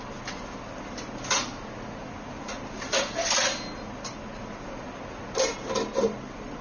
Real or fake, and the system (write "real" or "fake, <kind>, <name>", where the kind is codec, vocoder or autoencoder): real